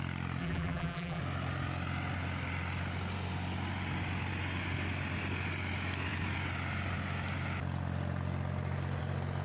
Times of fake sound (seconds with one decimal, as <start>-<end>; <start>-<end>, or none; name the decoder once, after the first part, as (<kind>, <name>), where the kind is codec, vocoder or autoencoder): 0.4-1.2 (vocoder, BigVGAN v2)